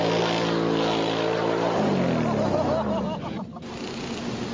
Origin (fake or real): real